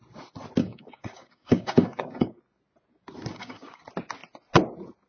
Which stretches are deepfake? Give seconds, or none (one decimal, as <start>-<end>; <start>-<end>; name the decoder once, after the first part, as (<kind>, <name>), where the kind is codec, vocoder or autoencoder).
0.6-2.4 (codec, DAC); 3.3-3.8